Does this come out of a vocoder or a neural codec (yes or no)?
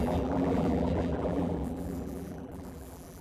yes